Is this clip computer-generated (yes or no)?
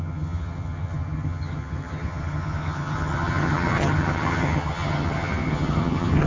yes